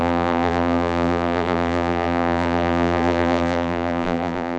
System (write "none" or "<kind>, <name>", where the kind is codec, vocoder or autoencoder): vocoder, BigVGAN v2